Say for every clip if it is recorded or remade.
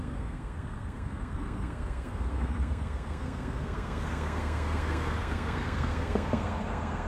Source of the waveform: remade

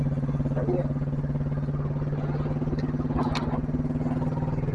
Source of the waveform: recorded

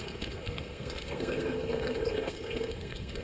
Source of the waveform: remade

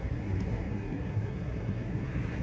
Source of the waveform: remade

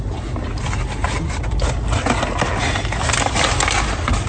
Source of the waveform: recorded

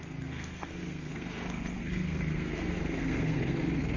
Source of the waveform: remade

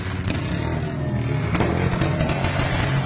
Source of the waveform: recorded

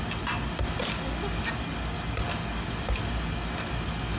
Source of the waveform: recorded